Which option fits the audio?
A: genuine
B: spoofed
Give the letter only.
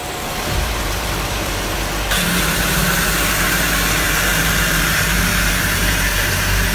B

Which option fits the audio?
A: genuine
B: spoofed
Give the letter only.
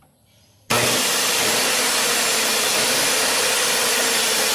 A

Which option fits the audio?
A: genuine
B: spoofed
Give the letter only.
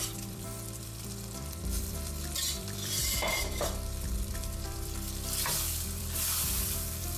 B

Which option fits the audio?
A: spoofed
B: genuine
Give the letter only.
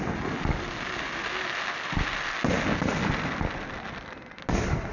B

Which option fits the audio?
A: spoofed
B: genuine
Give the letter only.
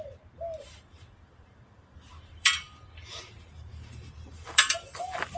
A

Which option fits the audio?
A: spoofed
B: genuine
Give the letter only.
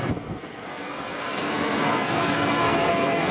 A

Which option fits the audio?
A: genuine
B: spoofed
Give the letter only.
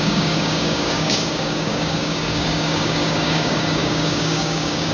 B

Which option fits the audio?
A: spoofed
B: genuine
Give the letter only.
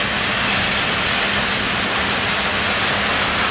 B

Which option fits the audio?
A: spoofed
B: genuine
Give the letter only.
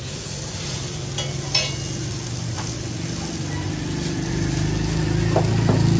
B